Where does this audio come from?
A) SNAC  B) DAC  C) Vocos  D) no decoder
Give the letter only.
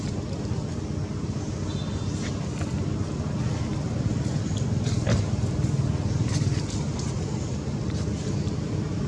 D